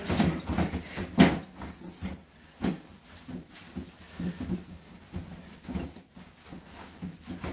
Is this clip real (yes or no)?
yes